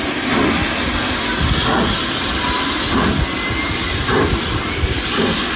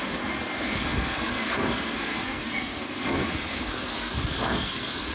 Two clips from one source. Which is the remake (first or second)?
second